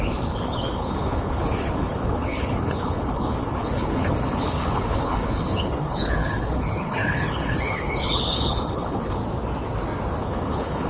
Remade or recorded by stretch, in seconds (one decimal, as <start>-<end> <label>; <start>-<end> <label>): 0.0-9.2 remade; 9.2-10.2 recorded; 10.2-10.9 remade